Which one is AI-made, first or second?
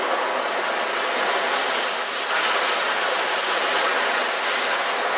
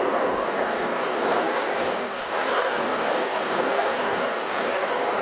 second